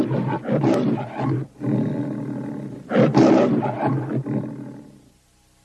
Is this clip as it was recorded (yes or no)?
yes